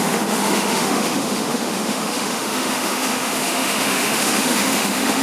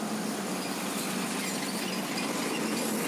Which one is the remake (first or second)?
first